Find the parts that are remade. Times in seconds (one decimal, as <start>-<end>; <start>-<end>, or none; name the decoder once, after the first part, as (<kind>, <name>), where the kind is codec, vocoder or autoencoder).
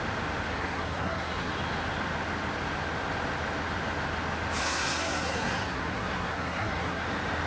0.5-1.5 (codec, SNAC); 4.6-7.0